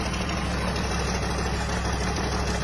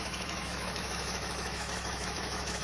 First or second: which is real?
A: first